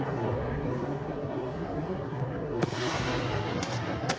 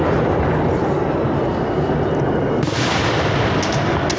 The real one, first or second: second